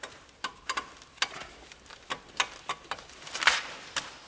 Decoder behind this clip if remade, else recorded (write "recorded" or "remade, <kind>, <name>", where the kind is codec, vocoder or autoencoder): recorded